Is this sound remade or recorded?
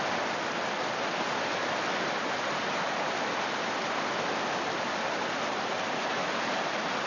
recorded